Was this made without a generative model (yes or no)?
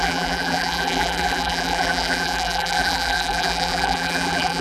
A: no